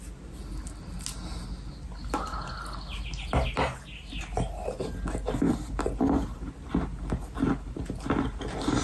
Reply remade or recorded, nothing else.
recorded